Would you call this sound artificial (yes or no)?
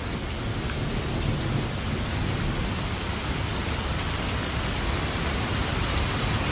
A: no